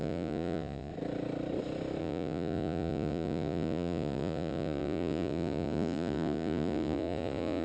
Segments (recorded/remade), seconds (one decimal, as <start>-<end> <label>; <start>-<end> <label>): 0.0-0.9 remade; 0.9-2.0 recorded; 2.0-7.6 remade